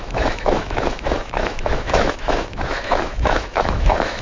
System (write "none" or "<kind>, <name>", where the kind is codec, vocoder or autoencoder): autoencoder, DAC-VAE